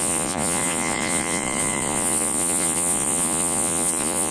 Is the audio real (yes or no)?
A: no